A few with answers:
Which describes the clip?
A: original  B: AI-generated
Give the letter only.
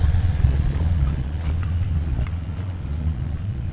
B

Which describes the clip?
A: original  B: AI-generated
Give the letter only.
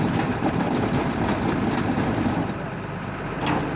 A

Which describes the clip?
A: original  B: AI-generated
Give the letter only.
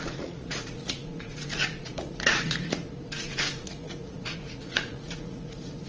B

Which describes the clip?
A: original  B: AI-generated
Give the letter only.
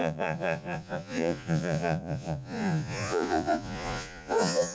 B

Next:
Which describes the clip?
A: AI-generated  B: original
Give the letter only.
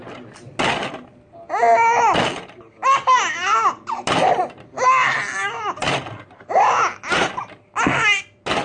B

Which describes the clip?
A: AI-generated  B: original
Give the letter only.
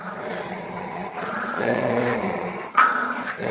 A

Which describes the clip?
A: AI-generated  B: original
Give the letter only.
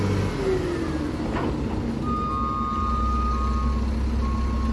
B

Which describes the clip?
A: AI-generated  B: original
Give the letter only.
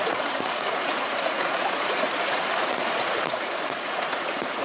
A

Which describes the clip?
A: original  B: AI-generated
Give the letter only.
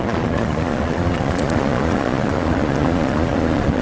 B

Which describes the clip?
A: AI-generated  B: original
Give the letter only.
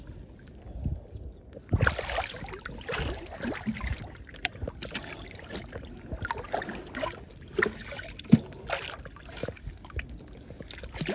B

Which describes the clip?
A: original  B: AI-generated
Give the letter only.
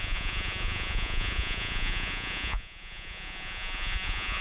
B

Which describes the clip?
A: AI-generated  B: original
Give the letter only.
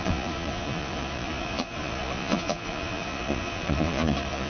A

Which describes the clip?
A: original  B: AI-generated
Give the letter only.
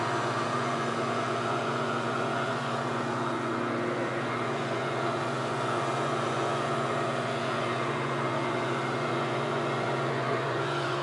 B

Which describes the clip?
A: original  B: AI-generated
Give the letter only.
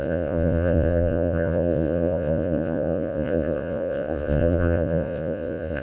B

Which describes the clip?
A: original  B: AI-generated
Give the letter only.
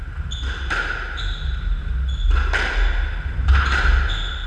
A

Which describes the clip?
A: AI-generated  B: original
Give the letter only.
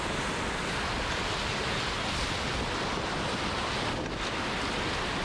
B